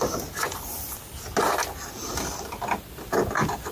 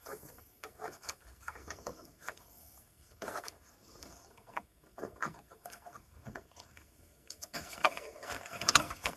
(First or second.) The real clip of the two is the first